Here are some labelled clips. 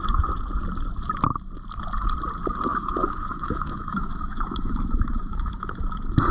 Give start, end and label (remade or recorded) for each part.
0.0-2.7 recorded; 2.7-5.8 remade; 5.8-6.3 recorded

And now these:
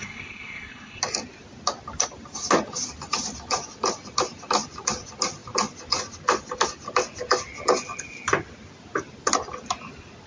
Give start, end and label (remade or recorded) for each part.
0.0-1.0 remade; 1.0-10.3 recorded